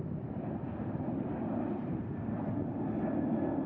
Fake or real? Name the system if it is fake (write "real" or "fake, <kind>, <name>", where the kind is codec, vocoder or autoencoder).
real